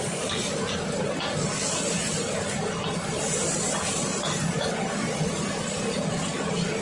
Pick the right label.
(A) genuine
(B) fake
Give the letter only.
A